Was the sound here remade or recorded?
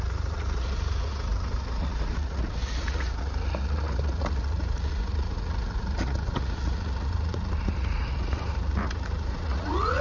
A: remade